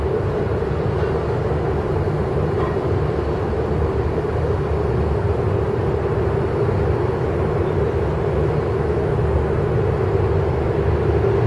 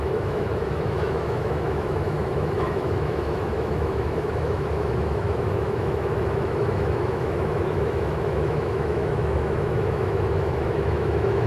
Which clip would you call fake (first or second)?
second